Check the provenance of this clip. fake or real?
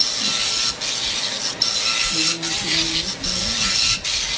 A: real